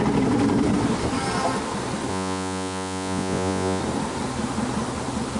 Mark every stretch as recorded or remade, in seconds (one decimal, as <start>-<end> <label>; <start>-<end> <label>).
0.0-2.1 recorded; 2.1-3.8 remade; 3.8-5.4 recorded